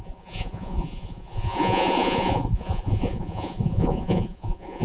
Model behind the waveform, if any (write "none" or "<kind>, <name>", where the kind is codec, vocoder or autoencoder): vocoder, Vocos